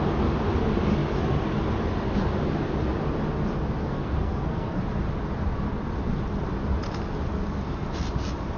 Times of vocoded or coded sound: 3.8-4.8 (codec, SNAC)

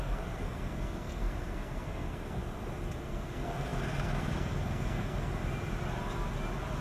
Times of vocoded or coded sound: 0.0-2.4 (codec, SNAC); 3.0-5.3

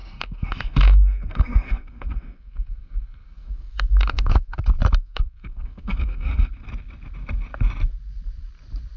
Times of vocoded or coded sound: 0.0-4.6 (codec, SNAC); 5.0-6.5